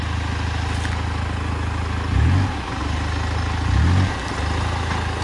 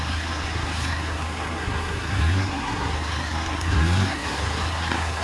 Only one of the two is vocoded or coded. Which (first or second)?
second